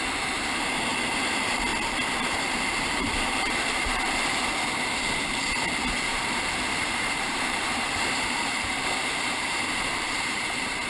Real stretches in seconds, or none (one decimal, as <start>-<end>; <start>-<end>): 1.7-2.8; 4.5-6.8